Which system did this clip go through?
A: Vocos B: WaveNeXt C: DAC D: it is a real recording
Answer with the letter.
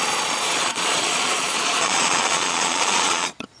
A